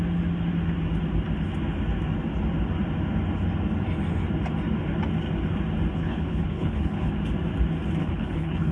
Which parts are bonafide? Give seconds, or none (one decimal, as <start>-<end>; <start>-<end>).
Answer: 0.0-6.0; 7.1-8.0